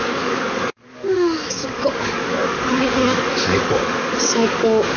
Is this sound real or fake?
fake